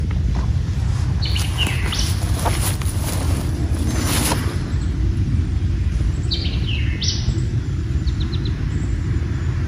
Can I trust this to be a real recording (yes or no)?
yes